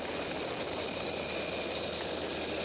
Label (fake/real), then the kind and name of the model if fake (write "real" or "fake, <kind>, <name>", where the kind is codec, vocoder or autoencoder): real